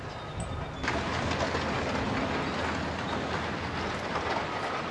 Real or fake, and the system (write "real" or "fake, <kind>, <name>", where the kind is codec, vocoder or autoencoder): real